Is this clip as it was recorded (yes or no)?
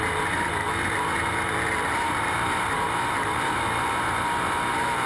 no